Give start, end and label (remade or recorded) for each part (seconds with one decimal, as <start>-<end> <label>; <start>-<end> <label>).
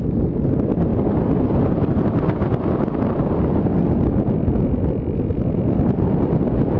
0.0-6.8 recorded